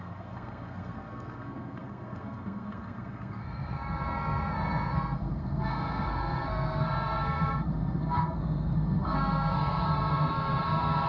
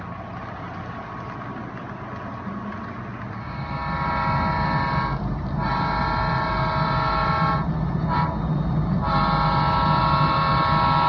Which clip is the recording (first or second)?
second